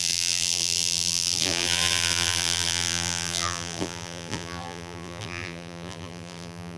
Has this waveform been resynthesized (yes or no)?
yes